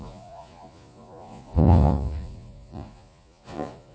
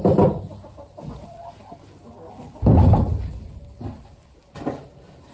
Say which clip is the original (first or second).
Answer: second